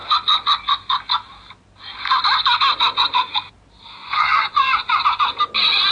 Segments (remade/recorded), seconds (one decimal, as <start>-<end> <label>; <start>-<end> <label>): 0.0-4.0 recorded; 4.0-5.0 remade; 5.0-5.9 recorded